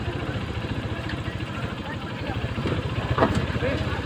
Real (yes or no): no